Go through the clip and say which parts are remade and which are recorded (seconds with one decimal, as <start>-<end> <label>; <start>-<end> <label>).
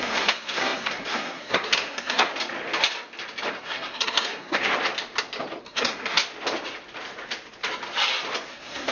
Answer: 0.0-2.3 remade; 2.3-3.5 recorded; 3.5-4.7 remade; 4.7-5.6 recorded; 5.6-6.2 remade; 6.2-8.5 recorded; 8.5-8.9 remade